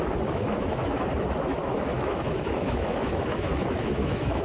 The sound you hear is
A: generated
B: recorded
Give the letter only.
A